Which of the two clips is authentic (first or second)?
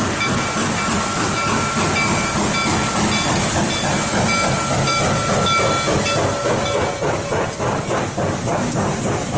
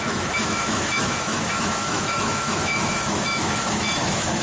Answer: first